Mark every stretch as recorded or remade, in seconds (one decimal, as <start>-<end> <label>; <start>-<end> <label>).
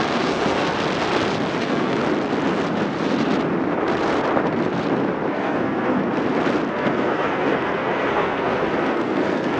0.0-0.7 remade; 0.7-1.6 recorded; 1.6-2.0 remade; 2.0-5.3 recorded; 5.3-6.0 remade; 6.0-6.7 recorded; 6.7-9.6 remade